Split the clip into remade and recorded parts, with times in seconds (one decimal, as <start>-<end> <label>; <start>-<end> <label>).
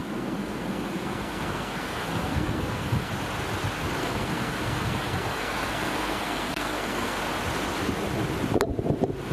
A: 0.0-3.1 remade; 3.1-4.0 recorded; 4.0-7.2 remade; 7.2-9.3 recorded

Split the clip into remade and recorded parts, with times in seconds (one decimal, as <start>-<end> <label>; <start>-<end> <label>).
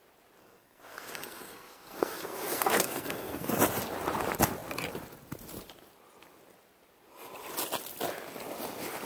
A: 0.0-0.4 recorded; 0.4-3.6 remade; 3.6-9.1 recorded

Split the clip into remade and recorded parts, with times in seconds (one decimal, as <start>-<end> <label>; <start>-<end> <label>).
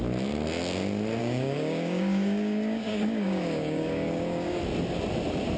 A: 0.0-1.2 recorded; 1.2-4.6 remade; 4.6-5.6 recorded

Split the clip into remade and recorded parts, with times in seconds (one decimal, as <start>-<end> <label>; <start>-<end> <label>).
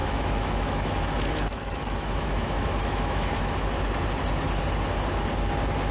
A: 0.0-3.4 remade; 3.4-5.9 recorded